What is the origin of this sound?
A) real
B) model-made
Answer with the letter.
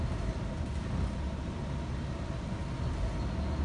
A